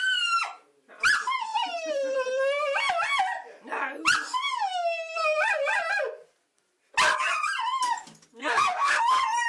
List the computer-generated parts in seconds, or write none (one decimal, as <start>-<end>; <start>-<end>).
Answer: 8.4-9.0